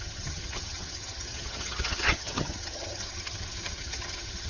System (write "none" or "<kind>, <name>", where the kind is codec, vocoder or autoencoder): vocoder, HiFi-GAN